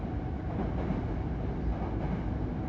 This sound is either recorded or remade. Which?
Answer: recorded